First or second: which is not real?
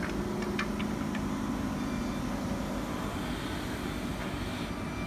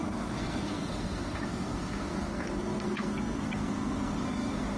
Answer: second